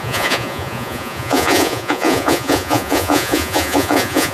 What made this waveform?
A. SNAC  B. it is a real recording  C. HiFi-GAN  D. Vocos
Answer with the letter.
D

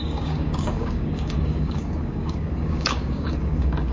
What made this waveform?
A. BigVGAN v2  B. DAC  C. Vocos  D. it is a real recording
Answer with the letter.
B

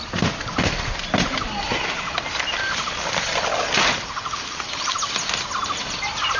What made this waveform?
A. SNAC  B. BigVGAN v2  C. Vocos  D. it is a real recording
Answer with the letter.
D